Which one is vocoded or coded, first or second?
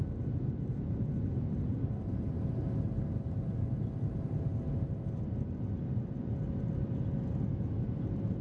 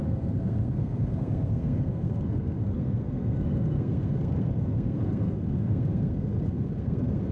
second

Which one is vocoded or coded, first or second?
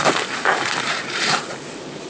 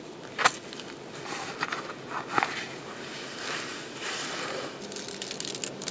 first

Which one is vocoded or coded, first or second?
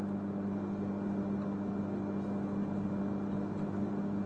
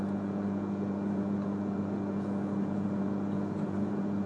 second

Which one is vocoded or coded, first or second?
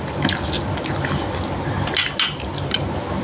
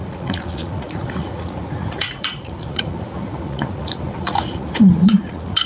second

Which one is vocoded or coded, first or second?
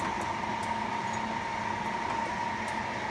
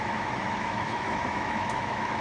second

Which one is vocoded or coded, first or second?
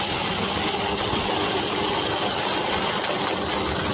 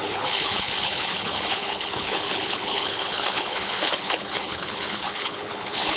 second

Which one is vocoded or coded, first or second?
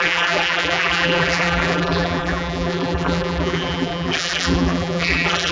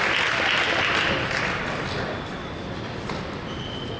first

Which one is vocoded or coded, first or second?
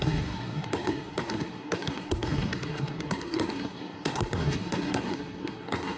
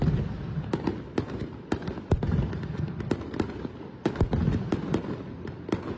first